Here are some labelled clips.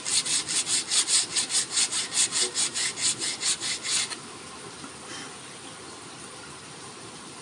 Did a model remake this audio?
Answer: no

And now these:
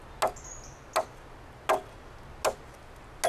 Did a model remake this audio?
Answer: no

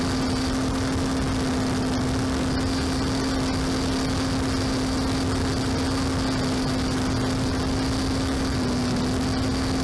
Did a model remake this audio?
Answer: no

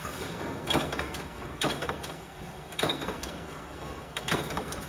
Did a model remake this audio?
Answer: yes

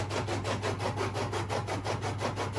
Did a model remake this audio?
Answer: no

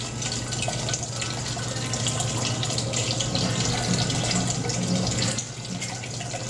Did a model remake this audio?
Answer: no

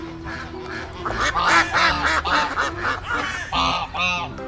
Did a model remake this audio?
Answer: no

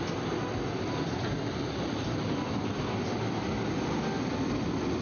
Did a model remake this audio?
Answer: no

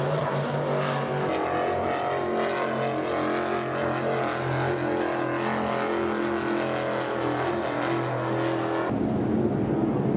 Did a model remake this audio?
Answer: no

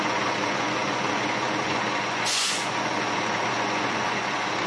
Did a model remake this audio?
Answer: yes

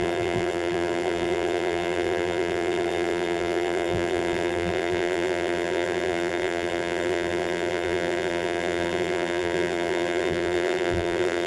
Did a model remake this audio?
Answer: yes